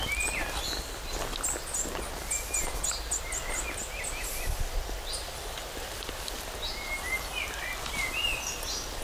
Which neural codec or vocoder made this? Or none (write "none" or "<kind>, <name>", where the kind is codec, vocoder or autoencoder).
none